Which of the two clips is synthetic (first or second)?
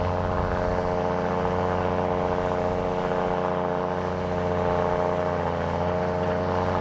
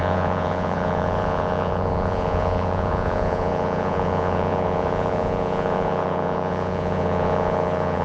second